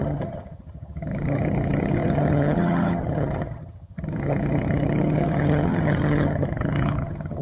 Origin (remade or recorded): remade